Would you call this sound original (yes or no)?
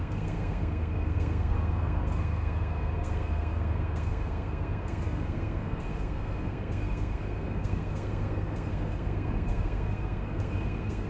no